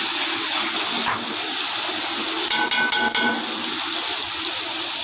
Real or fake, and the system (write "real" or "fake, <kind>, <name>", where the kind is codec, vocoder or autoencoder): real